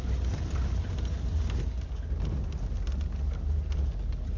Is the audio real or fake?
real